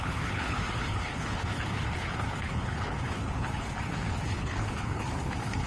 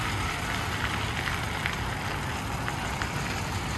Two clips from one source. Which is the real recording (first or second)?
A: second